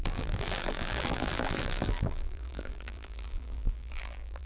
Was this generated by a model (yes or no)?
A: yes